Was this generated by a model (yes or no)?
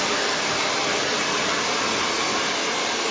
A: no